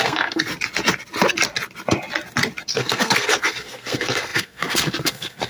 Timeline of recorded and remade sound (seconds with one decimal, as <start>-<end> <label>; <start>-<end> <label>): 0.0-0.5 remade; 0.5-2.7 recorded; 2.7-5.5 remade